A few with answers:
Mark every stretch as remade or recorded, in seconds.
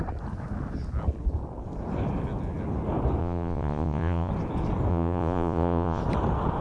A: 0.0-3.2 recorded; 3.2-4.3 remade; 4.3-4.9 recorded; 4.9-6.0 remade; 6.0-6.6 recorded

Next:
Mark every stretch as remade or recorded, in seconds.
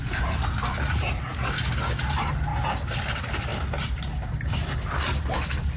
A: 0.0-5.8 recorded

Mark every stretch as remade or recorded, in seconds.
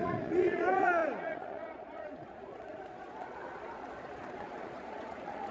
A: 0.0-5.5 remade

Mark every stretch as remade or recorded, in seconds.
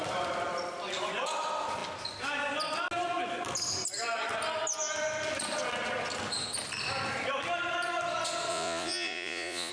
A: 0.0-8.5 recorded; 8.5-9.7 remade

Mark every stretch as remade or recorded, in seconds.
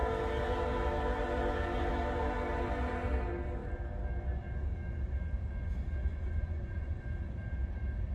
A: 0.0-6.1 recorded; 6.1-7.0 remade; 7.0-8.1 recorded